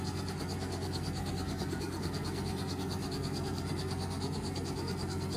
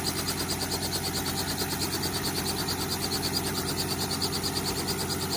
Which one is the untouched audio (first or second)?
second